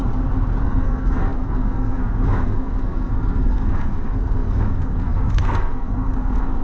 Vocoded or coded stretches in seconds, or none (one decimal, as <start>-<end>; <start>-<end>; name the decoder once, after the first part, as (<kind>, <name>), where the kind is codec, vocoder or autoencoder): 0.6-6.6 (codec, SNAC)